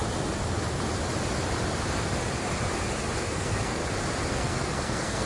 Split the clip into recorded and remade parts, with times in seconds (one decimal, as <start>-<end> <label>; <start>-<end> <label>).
0.0-3.2 recorded; 3.2-3.8 remade; 3.8-4.3 recorded; 4.3-5.3 remade